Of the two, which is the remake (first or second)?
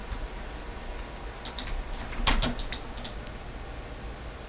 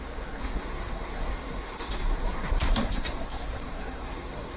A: second